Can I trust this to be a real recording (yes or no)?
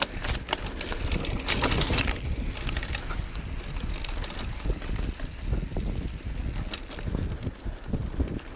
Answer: yes